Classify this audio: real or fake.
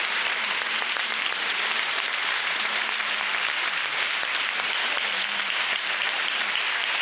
fake